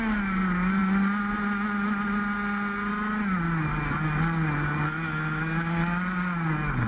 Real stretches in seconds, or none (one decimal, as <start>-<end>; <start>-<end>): 0.0-6.9